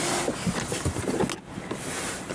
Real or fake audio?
real